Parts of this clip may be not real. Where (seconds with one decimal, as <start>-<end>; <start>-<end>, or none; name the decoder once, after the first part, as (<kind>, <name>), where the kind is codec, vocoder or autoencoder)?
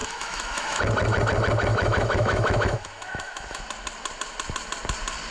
0.0-0.8 (autoencoder, DAC-VAE); 1.7-3.6